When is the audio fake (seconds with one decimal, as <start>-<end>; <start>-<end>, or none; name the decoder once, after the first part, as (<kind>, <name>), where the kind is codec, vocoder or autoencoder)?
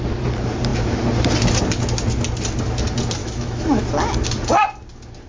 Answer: 3.2-3.8 (autoencoder, DAC-VAE)